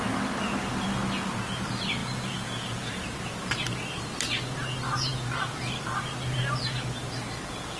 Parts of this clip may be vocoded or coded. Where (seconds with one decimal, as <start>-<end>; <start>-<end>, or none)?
2.0-2.9